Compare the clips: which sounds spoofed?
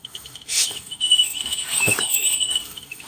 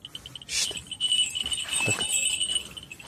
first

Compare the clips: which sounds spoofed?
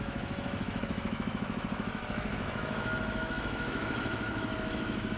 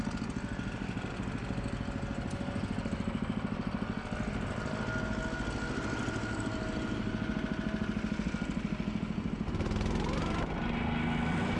first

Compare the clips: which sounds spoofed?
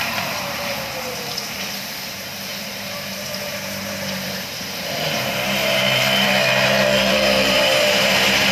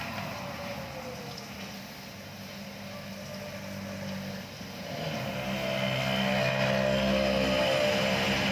first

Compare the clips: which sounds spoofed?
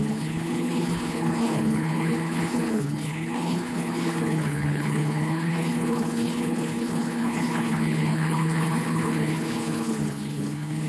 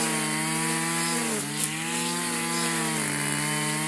first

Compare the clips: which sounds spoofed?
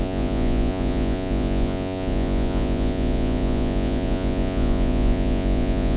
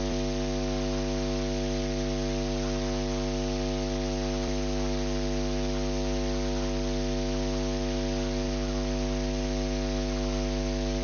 first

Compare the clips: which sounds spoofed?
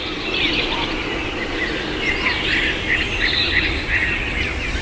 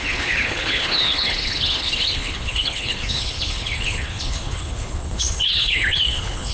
second